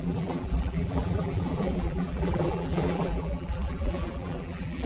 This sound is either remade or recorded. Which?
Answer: remade